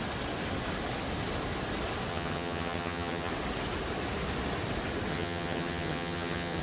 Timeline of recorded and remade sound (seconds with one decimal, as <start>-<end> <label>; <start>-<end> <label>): 0.0-2.1 recorded; 2.1-3.3 remade; 3.3-5.1 recorded; 5.1-6.6 remade